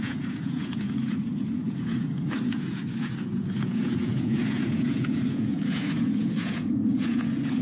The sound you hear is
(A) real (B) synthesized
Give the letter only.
B